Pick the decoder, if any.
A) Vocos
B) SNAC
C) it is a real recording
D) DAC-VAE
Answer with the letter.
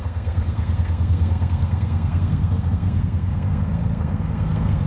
B